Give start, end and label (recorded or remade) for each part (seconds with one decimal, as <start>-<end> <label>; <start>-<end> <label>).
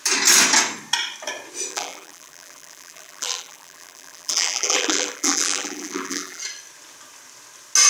0.0-1.7 recorded; 1.7-6.4 remade; 6.4-7.9 recorded